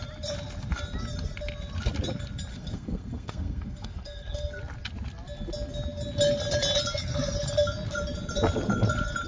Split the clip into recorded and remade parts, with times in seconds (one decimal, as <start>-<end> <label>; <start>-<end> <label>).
0.0-2.5 recorded; 2.5-4.6 remade; 4.6-9.3 recorded